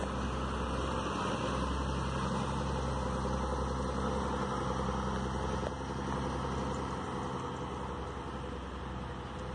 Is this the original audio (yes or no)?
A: yes